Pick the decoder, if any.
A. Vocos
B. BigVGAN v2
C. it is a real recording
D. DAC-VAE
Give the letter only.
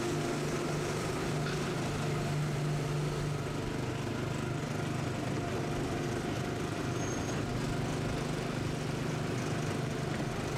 C